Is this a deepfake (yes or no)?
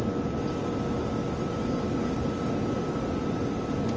no